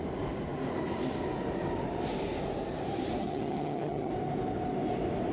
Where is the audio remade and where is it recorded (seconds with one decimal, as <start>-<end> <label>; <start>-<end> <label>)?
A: 0.0-3.2 recorded; 3.2-4.1 remade; 4.1-5.3 recorded